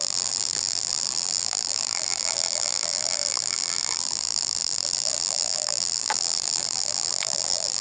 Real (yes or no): no